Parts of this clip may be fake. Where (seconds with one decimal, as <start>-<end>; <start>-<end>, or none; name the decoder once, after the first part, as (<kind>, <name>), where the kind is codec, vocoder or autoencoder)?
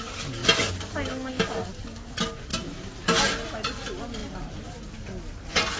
4.2-4.9 (vocoder, BigVGAN v2)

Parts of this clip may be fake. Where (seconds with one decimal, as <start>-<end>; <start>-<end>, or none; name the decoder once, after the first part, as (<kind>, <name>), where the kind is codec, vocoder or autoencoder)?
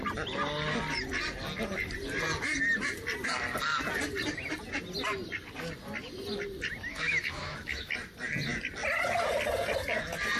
6.9-7.9 (autoencoder, DAC-VAE)